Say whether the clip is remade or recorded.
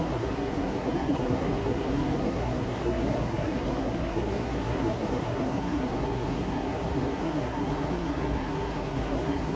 remade